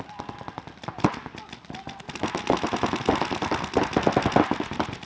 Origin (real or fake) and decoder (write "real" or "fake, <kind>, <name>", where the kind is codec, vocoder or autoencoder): real